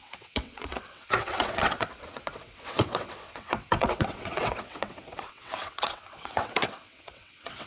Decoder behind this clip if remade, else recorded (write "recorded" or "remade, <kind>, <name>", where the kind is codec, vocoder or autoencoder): remade, vocoder, WaveNeXt